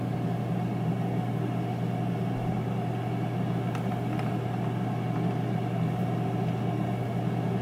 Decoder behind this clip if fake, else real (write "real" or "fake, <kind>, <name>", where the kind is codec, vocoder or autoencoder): real